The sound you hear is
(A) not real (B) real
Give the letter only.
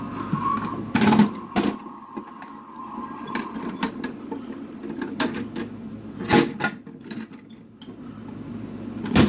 B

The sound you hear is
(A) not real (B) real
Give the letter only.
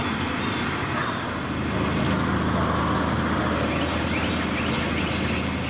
B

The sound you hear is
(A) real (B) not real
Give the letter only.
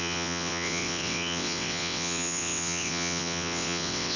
B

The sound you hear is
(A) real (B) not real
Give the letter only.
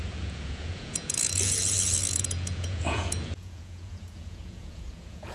B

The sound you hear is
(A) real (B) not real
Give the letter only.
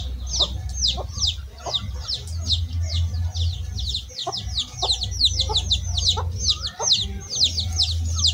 A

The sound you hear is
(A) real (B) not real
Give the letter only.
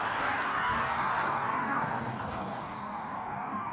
B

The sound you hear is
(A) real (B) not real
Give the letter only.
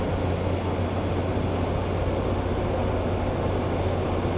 A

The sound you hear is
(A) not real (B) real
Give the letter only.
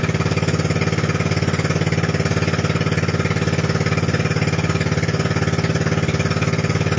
B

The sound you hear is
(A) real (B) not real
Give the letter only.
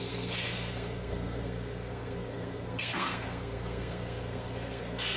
B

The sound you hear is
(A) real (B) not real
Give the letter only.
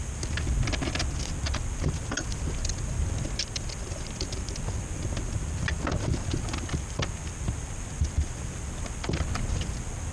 A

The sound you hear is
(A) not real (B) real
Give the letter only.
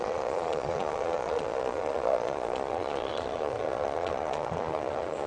A